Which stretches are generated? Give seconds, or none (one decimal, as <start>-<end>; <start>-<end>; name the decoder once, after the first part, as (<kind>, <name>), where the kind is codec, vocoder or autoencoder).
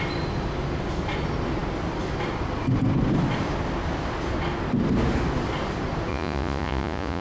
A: 6.1-7.2 (vocoder, Vocos)